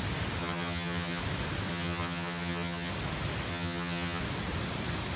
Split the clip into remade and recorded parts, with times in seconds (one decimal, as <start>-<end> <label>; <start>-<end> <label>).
0.0-0.4 recorded; 0.4-1.2 remade; 1.2-1.7 recorded; 1.7-2.9 remade; 2.9-3.5 recorded; 3.5-4.2 remade; 4.2-5.2 recorded